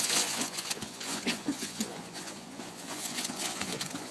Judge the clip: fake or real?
fake